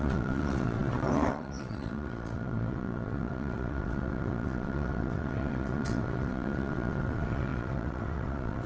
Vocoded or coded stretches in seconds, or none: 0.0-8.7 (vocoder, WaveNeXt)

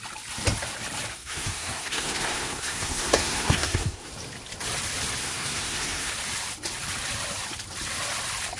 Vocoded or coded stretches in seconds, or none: 1.1-4.1 (codec, SNAC); 5.2-6.1

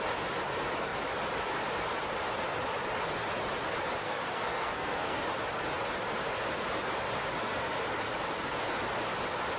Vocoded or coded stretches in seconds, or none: 4.0-5.2 (codec, SNAC)

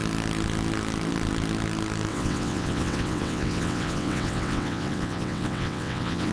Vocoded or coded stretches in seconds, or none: 2.1-6.3 (vocoder, WaveNeXt)

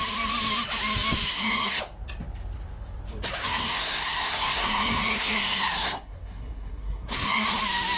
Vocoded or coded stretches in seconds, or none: 1.3-1.8 (codec, SNAC); 3.4-7.6

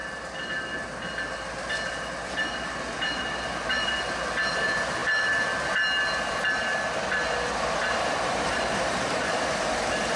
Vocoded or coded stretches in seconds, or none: 7.8-8.6 (vocoder, BigVGAN v2)